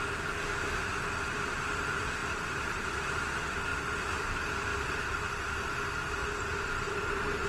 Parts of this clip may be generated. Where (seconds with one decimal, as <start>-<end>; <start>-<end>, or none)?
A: 2.2-3.3